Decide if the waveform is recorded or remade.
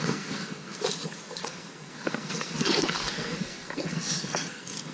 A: remade